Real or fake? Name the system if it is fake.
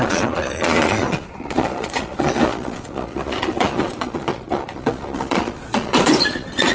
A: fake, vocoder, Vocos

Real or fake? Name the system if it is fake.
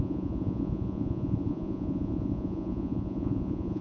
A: fake, vocoder, Vocos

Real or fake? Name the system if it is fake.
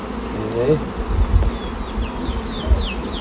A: real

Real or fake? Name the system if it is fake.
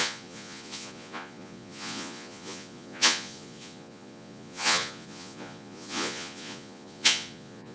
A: fake, vocoder, Vocos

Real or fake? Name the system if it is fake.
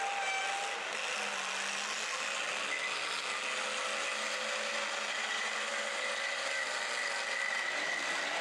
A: real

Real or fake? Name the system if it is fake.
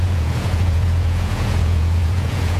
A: fake, vocoder, Vocos